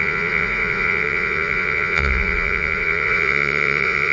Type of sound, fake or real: fake